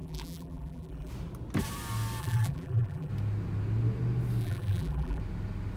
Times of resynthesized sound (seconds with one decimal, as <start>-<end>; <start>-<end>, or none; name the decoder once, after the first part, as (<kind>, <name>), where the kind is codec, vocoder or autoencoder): 0.0-1.1 (vocoder, BigVGAN v2); 2.2-3.1; 4.4-5.2